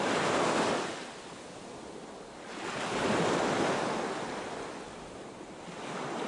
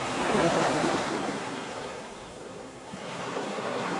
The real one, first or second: first